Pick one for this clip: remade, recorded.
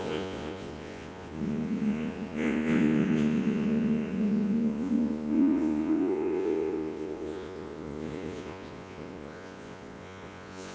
remade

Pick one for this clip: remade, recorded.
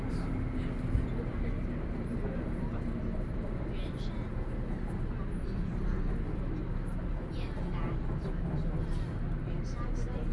recorded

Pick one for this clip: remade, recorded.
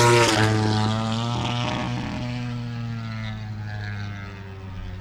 recorded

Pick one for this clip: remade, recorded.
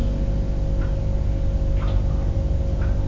recorded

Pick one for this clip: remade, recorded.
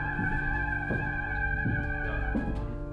recorded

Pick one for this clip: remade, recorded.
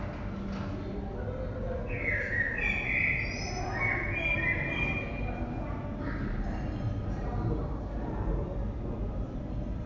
recorded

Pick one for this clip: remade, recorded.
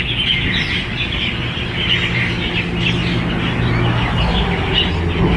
recorded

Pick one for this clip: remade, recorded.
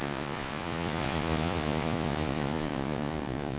remade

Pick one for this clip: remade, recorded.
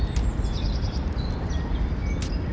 recorded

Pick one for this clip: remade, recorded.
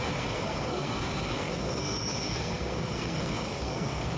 remade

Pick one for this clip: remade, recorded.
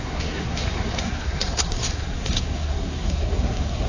remade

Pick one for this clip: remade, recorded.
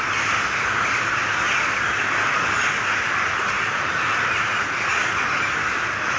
recorded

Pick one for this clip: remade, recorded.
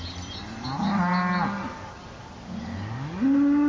recorded